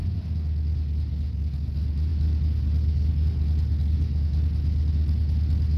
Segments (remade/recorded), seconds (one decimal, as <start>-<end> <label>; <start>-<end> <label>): 0.0-5.8 recorded